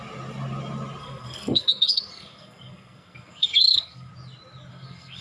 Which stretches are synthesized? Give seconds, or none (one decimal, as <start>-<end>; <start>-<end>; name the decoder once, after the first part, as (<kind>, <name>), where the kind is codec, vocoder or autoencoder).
1.0-4.1 (codec, SNAC); 4.7-5.2